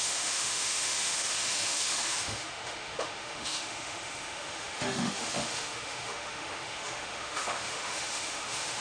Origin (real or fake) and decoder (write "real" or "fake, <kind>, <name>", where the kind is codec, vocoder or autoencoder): fake, autoencoder, DAC-VAE